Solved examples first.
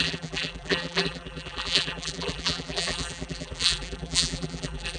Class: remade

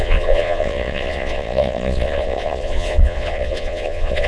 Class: remade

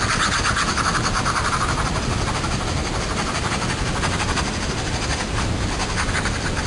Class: recorded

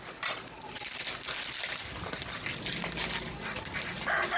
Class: recorded